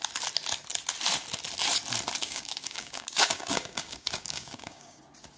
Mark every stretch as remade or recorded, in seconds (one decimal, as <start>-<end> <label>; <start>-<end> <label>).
0.0-2.2 recorded; 2.2-5.0 remade; 5.0-5.4 recorded